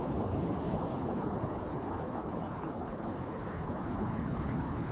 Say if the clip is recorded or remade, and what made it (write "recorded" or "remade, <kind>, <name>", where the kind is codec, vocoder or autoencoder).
remade, codec, HILCodec